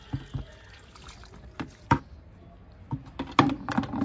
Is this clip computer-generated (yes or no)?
no